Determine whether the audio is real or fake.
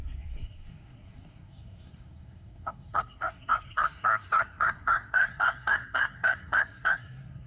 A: fake